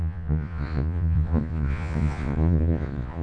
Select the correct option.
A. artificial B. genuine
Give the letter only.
A